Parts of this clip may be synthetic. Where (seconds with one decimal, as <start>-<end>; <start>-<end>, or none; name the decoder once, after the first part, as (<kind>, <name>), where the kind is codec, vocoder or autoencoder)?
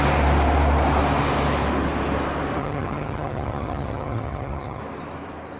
2.6-4.8 (vocoder, HiFi-GAN)